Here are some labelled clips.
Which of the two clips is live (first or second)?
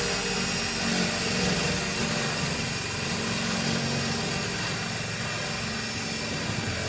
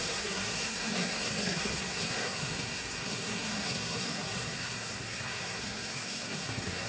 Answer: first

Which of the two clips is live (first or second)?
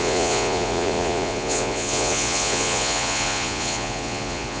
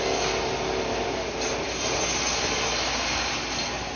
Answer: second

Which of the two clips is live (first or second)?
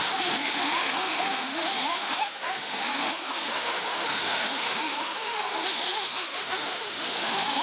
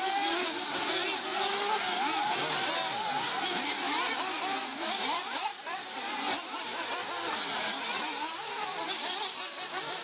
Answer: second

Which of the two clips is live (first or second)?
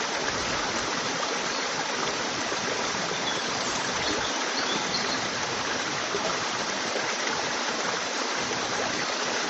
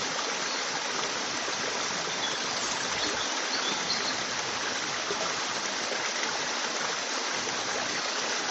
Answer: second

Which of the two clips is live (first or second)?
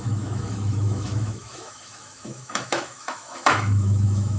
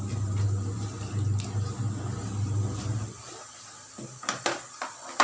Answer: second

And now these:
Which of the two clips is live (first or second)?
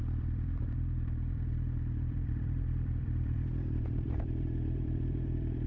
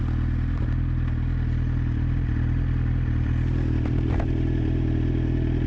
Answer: second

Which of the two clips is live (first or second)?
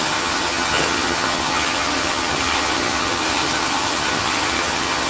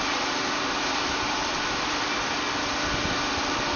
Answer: second